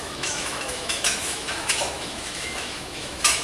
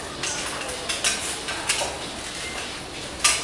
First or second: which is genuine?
second